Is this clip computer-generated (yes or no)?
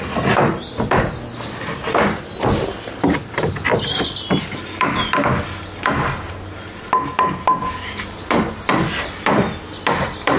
no